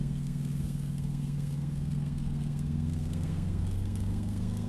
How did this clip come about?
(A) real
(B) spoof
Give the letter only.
B